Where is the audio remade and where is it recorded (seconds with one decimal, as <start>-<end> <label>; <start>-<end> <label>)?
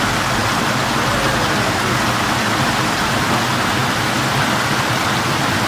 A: 0.0-5.7 recorded